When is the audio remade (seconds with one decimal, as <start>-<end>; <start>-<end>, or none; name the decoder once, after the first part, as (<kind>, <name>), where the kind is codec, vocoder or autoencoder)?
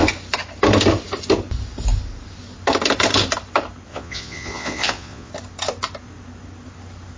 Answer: 3.9-5.3 (vocoder, Vocos)